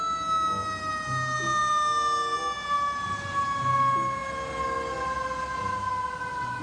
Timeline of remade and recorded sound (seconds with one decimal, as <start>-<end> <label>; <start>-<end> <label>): 0.0-6.6 recorded